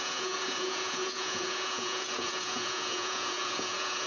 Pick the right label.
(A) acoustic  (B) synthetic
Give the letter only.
B